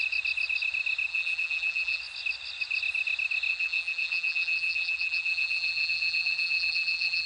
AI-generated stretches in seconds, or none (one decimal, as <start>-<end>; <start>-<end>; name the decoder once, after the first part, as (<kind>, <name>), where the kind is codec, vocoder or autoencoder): 1.1-2.0 (vocoder, BigVGAN v2); 3.5-7.3